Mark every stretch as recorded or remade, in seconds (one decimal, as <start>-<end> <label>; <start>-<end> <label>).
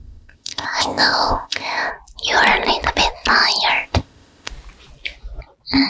0.0-1.9 remade; 1.9-3.7 recorded; 3.7-4.5 remade; 4.5-5.9 recorded